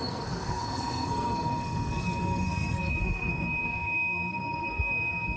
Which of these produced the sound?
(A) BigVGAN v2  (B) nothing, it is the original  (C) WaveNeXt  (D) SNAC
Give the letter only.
D